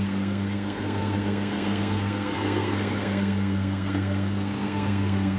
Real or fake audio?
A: fake